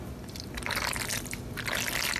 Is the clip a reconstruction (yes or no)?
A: no